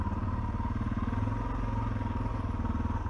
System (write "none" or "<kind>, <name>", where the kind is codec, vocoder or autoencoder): none